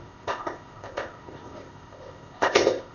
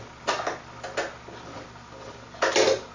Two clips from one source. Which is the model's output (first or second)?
first